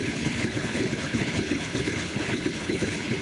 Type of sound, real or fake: fake